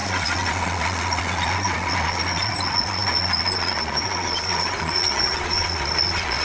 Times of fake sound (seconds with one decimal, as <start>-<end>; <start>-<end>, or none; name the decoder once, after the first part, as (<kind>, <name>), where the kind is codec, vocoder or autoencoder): 0.0-6.4 (vocoder, Vocos)